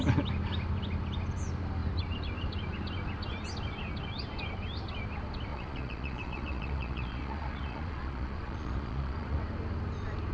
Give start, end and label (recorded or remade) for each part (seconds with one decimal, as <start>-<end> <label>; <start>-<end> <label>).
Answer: 0.0-5.5 recorded; 5.5-9.4 remade; 9.4-10.3 recorded